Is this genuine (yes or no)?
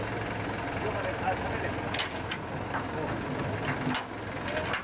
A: yes